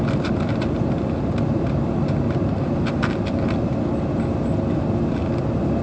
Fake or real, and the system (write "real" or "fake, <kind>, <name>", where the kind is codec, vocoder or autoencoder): real